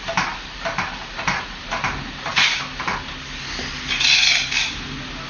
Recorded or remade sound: recorded